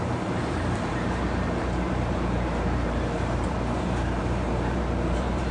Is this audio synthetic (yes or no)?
yes